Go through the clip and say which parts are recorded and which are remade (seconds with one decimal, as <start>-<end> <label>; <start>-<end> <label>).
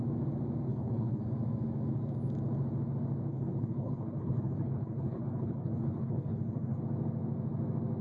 0.0-0.7 recorded; 0.7-1.2 remade; 1.2-3.3 recorded; 3.3-6.8 remade; 6.8-8.0 recorded